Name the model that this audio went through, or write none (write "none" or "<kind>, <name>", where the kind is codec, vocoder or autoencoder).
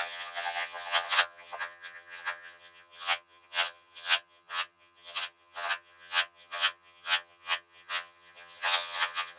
vocoder, HiFi-GAN